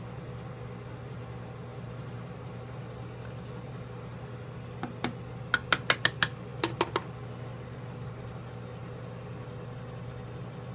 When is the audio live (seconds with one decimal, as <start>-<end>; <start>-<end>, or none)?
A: 0.0-10.7